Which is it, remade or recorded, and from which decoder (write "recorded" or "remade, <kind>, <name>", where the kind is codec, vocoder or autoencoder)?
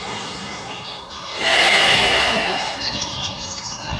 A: remade, codec, SNAC